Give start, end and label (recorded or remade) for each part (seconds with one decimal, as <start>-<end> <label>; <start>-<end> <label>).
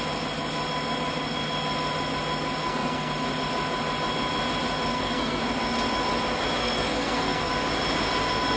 0.0-2.6 recorded; 2.6-3.1 remade; 3.1-4.9 recorded; 4.9-5.4 remade; 5.4-6.6 recorded; 6.6-7.5 remade; 7.5-8.6 recorded